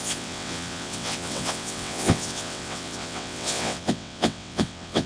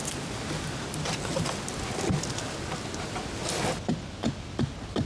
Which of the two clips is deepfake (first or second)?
first